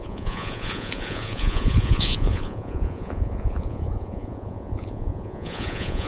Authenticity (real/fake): fake